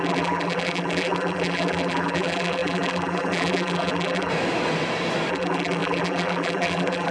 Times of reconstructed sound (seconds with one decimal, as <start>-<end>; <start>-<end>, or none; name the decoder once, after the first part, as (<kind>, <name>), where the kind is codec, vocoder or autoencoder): 0.0-4.3 (vocoder, BigVGAN v2); 5.3-7.1